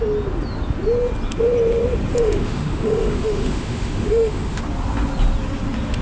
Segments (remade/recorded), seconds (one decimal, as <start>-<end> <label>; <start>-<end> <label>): 0.0-2.1 recorded; 2.1-4.6 remade; 4.6-6.0 recorded